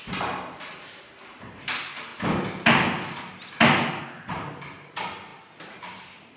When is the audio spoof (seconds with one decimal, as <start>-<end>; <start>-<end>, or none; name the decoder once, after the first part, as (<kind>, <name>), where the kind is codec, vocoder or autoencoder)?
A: 0.0-2.1 (vocoder, BigVGAN v2); 4.0-6.4